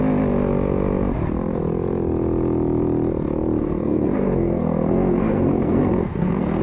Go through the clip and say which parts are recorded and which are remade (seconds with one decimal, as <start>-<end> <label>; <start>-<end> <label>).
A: 0.0-3.6 recorded; 3.6-6.6 remade